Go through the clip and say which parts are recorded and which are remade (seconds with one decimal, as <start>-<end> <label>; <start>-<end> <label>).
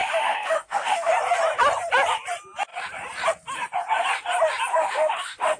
0.0-1.1 remade; 1.1-4.7 recorded; 4.7-5.6 remade